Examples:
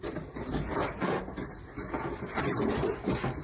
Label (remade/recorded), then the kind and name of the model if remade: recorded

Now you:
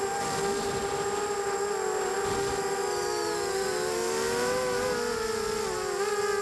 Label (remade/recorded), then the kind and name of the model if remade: recorded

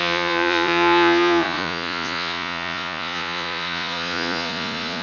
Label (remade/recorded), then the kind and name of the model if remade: remade, vocoder, Vocos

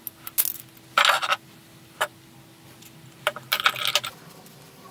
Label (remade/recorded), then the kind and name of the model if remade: recorded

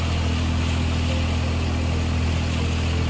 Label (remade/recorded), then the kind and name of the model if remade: recorded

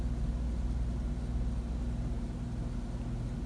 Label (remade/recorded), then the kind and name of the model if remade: recorded